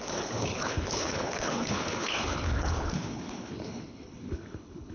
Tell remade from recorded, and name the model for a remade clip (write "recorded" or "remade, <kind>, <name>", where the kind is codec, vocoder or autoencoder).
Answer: remade, codec, HILCodec